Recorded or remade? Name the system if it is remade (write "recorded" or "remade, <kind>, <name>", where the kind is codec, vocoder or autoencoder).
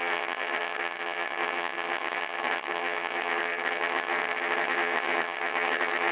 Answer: remade, vocoder, HiFi-GAN